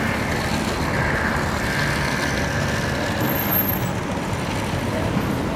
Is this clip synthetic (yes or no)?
no